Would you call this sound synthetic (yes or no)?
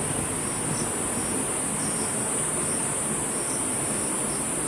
no